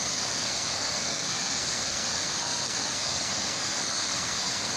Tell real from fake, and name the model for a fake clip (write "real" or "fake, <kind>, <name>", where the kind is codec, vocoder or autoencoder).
fake, codec, SNAC